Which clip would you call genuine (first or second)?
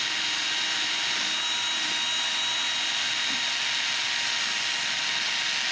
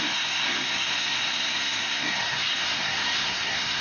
first